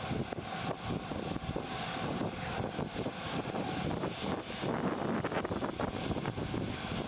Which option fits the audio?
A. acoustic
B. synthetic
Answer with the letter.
A